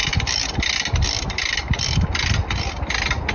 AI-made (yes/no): no